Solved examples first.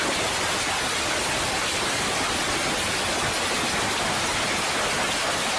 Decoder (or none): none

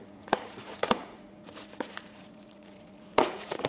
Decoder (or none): vocoder, Vocos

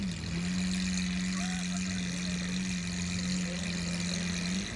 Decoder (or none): none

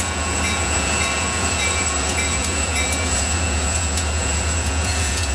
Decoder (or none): vocoder, Vocos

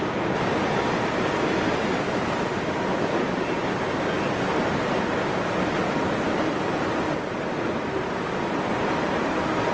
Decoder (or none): none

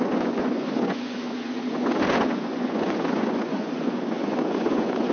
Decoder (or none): vocoder, Vocos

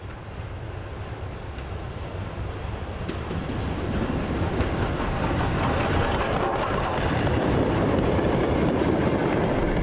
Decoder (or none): none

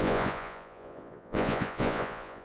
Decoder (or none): vocoder, Vocos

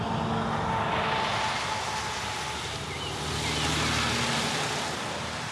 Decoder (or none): none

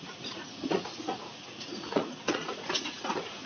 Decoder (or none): vocoder, Vocos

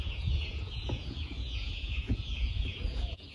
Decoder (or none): vocoder, Vocos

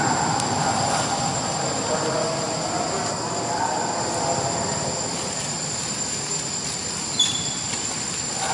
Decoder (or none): none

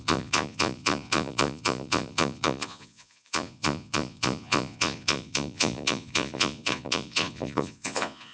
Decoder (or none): vocoder, Vocos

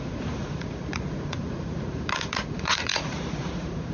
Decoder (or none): vocoder, Vocos